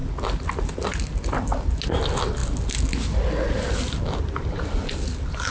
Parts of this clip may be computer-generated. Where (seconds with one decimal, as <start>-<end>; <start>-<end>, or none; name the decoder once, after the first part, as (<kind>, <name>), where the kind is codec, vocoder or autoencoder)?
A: none